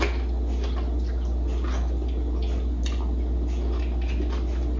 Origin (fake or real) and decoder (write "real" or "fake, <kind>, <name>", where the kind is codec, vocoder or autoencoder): real